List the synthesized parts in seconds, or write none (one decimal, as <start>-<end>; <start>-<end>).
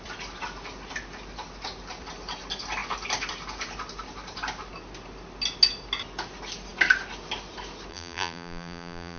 7.9-9.2